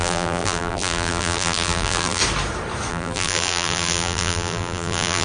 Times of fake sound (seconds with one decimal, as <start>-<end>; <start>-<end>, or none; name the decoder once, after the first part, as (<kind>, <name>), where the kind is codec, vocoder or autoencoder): 0.0-2.2 (vocoder, BigVGAN v2); 2.9-5.2